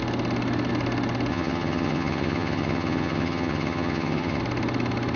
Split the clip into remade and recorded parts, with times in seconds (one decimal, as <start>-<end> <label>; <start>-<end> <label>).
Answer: 0.0-1.3 recorded; 1.3-4.4 remade; 4.4-5.2 recorded